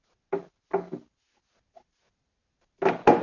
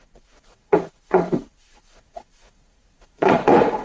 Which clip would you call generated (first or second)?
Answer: second